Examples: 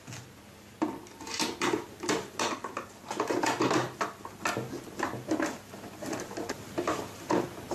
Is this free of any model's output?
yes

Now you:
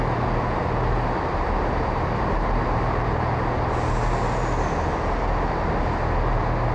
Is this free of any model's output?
yes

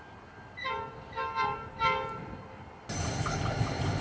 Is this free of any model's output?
yes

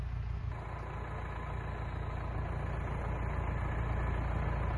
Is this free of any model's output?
yes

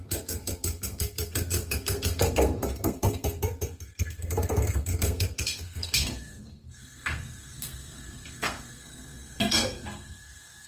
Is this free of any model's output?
no